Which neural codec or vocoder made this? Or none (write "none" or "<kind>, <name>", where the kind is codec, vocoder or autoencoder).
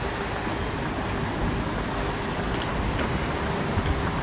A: none